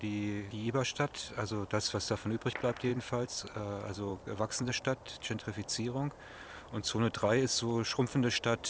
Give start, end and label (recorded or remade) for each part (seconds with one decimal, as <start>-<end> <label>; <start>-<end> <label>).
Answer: 0.0-2.9 recorded; 2.9-3.4 remade; 3.4-4.1 recorded; 4.1-4.7 remade; 4.7-8.7 recorded